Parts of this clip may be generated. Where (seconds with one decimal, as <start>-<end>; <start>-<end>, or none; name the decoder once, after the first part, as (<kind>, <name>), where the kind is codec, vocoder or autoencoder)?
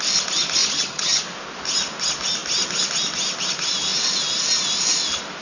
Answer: 0.6-1.2 (vocoder, HiFi-GAN)